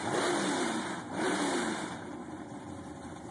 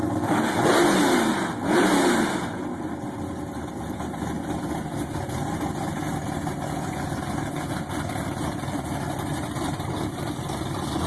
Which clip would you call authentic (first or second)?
second